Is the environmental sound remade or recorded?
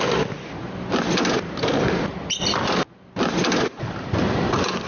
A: recorded